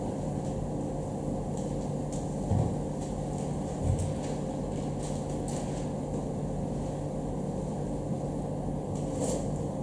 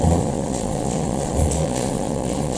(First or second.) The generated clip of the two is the second